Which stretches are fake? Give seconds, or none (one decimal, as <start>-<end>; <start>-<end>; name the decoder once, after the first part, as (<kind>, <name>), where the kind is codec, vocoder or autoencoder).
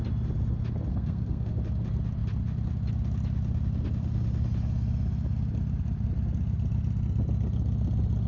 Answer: 0.9-1.5 (codec, SNAC)